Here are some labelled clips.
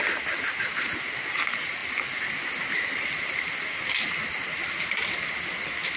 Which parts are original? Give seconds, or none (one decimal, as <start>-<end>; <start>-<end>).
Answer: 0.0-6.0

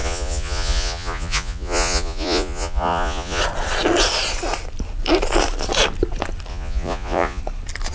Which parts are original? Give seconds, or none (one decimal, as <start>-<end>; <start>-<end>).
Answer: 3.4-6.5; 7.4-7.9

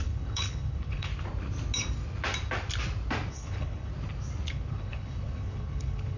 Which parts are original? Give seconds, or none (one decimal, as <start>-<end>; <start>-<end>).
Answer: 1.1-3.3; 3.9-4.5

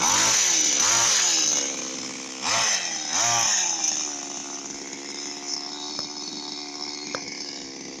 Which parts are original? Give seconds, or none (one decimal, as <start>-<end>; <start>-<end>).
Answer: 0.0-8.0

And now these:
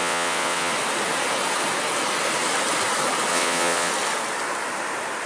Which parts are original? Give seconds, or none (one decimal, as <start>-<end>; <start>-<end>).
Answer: 0.7-3.3; 3.9-5.3

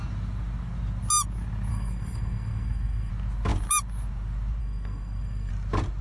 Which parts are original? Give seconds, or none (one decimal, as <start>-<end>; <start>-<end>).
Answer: 0.0-1.7; 3.1-4.6; 5.5-6.0

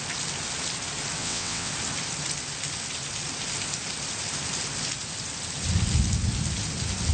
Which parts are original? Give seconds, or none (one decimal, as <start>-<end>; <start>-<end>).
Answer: 0.0-1.2; 1.7-7.1

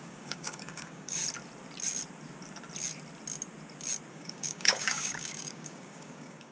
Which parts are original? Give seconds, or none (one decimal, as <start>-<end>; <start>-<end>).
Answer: 1.2-4.1